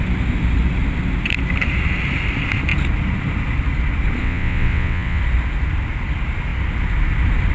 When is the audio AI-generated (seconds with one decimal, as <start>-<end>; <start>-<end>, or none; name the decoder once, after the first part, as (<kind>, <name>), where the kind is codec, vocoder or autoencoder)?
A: 4.2-5.2 (vocoder, WaveNeXt)